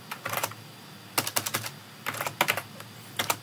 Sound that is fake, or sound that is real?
real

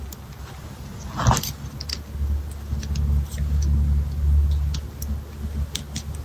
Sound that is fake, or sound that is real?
real